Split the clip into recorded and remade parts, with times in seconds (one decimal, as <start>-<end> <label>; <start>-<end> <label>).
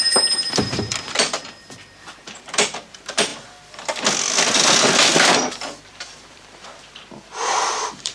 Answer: 0.0-0.9 remade; 0.9-2.2 recorded; 2.2-3.3 remade; 3.3-5.9 recorded; 5.9-8.1 remade